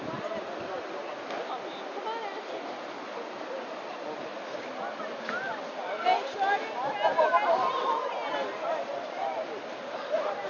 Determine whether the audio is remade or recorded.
recorded